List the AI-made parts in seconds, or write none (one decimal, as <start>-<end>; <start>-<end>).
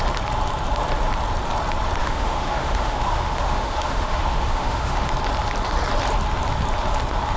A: 2.0-5.1